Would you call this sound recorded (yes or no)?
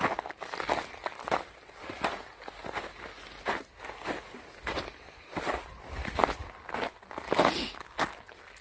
yes